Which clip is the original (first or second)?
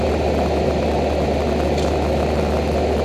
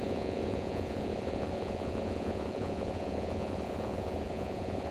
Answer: first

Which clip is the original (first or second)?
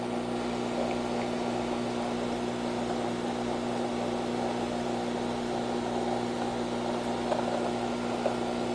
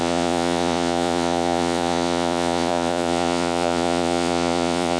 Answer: first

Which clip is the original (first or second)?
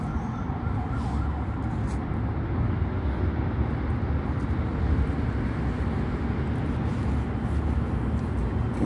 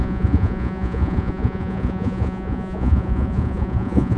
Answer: first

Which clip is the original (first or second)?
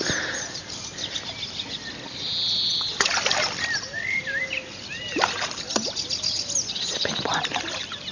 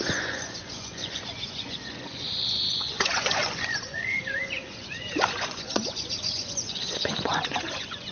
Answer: first